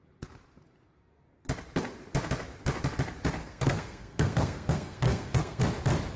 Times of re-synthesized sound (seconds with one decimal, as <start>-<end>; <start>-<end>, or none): 3.4-5.6